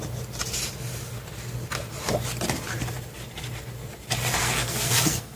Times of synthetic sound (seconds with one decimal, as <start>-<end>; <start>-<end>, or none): 4.4-5.4